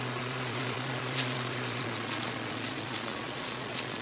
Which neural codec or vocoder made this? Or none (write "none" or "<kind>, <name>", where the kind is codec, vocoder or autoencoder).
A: vocoder, Vocos